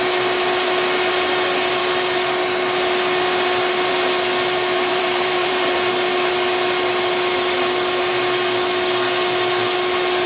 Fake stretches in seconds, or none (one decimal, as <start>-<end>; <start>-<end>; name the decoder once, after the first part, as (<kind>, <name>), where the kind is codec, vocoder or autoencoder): 4.9-5.9 (vocoder, BigVGAN v2)